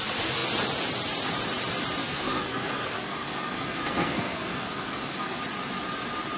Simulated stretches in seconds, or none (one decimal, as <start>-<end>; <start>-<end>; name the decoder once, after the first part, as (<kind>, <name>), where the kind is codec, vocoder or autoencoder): 2.0-5.4 (codec, SNAC)